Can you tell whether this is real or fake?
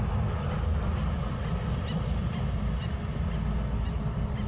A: real